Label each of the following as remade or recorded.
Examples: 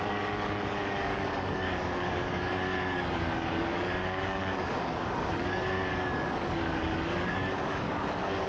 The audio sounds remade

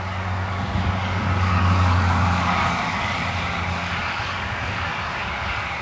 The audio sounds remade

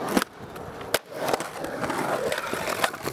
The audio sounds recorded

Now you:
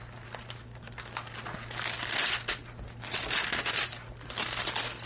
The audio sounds recorded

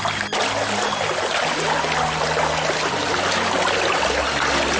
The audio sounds recorded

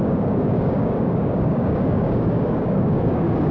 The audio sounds remade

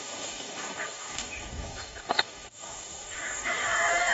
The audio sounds remade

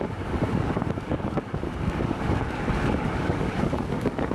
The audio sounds remade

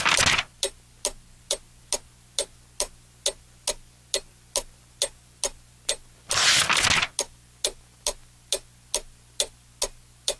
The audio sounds recorded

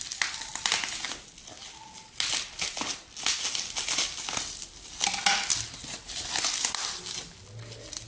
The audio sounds recorded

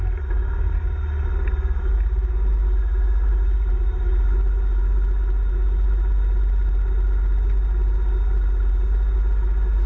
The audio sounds recorded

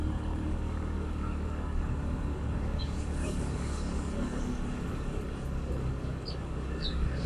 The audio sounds remade